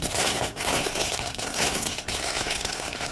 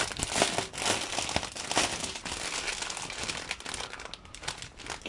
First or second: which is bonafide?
second